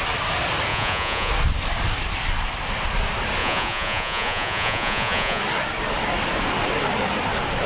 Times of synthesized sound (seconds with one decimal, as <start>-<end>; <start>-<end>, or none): 0.7-1.3; 3.4-5.4